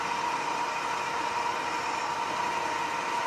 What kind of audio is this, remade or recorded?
recorded